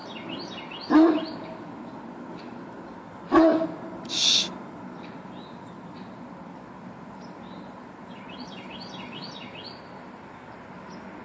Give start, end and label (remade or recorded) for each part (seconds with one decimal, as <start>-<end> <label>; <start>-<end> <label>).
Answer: 0.0-11.2 recorded